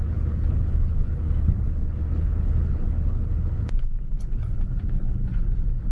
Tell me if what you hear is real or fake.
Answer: fake